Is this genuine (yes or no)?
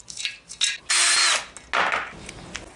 yes